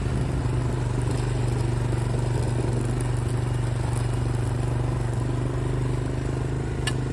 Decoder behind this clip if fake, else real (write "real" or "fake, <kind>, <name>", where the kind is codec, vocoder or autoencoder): real